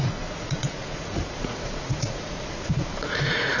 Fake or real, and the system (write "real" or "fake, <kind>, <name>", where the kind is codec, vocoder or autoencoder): fake, vocoder, Vocos